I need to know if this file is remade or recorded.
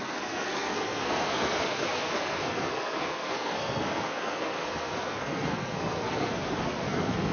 remade